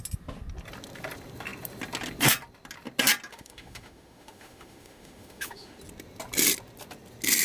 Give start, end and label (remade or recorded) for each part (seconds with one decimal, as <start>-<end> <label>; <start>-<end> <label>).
0.0-3.3 recorded; 3.3-5.8 remade; 5.8-7.4 recorded